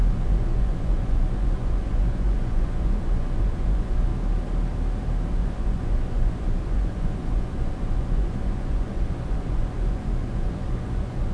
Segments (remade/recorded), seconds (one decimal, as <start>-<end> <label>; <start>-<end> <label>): 0.0-4.1 remade; 4.1-5.3 recorded; 5.3-11.3 remade